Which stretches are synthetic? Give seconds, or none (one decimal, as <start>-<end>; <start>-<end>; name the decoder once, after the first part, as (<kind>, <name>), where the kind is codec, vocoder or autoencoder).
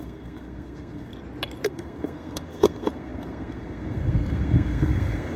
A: 0.0-1.1 (codec, SNAC); 1.7-5.4